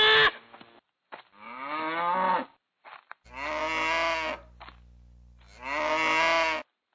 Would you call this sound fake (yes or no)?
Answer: no